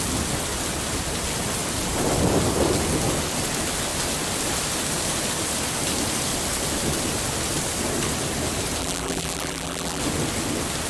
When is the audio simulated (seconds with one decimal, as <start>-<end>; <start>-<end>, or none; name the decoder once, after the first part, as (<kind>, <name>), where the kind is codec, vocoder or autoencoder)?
8.8-10.0 (vocoder, BigVGAN v2)